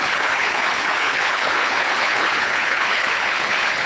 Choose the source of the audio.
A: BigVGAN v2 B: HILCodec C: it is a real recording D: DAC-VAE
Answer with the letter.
B